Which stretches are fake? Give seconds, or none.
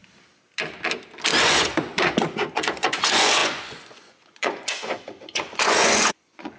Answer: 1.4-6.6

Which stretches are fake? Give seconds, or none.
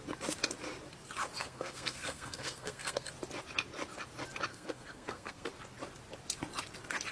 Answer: 1.4-3.1; 4.5-5.5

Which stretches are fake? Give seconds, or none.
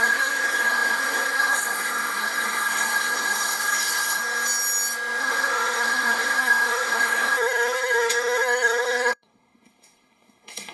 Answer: 0.0-4.2; 5.2-10.7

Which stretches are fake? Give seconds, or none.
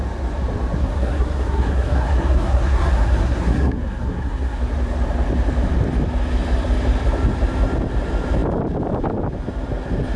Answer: 0.8-4.6